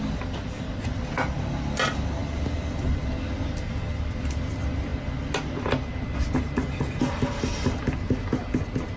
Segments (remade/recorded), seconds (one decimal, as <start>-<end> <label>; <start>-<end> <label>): 0.0-9.0 recorded